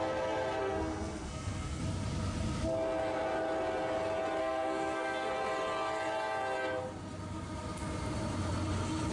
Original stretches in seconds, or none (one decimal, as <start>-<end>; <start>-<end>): 0.0-0.6; 1.8-4.4; 5.3-9.1